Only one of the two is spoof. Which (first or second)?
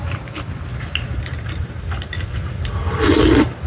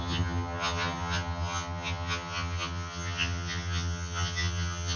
second